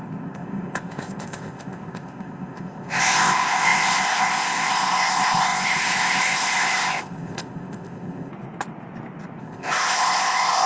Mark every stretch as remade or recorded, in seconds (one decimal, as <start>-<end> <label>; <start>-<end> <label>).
0.0-8.3 remade; 8.3-9.4 recorded; 9.4-10.7 remade